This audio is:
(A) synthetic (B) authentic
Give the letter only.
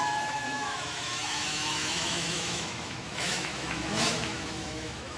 A